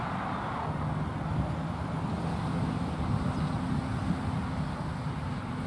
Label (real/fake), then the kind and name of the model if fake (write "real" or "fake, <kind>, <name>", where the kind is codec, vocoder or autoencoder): real